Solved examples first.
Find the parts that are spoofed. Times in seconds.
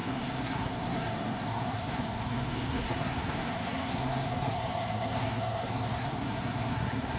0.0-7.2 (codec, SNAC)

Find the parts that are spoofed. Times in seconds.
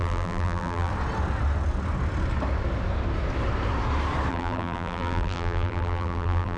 0.0-0.9 (vocoder, BigVGAN v2); 4.3-6.6